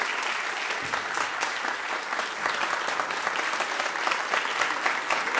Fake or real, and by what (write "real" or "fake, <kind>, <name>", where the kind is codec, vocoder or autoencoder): real